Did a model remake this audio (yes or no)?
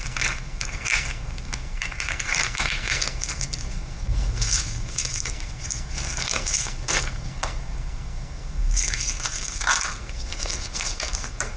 yes